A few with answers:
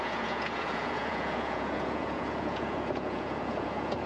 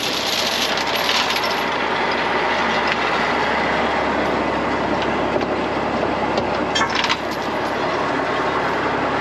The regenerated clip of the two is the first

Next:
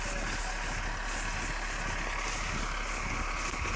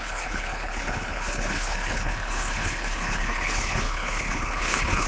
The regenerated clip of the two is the second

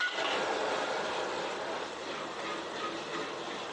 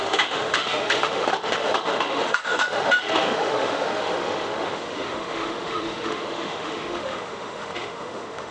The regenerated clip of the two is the second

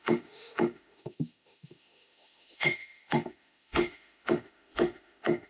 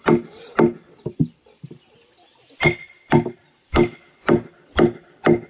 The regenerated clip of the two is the first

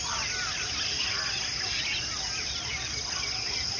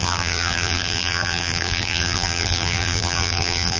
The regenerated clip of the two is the second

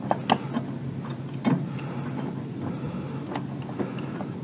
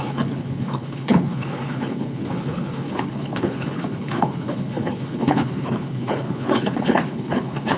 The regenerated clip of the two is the second